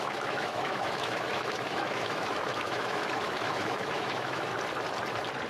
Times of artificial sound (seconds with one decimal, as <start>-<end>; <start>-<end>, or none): 0.0-4.5